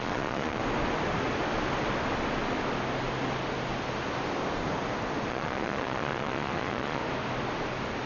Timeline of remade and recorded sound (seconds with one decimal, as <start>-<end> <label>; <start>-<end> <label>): 0.0-0.6 remade; 0.6-5.3 recorded; 5.3-7.0 remade; 7.0-8.1 recorded